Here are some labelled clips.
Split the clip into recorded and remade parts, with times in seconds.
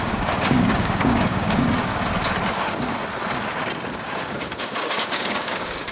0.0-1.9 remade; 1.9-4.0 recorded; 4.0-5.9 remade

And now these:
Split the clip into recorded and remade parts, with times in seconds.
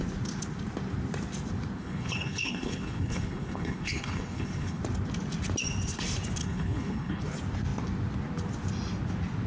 0.0-1.8 recorded; 1.8-4.8 remade; 4.8-6.4 recorded; 6.4-7.2 remade; 7.2-9.5 recorded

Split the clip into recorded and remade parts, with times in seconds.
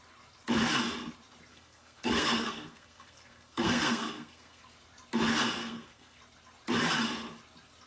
0.0-1.5 recorded; 1.5-4.6 remade; 4.6-5.6 recorded; 5.6-6.2 remade; 6.2-7.9 recorded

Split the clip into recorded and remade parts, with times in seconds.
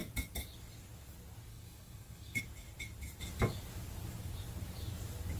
0.0-1.5 recorded; 1.5-2.4 remade; 2.4-5.4 recorded